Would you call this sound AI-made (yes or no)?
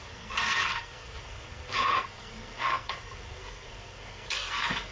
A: yes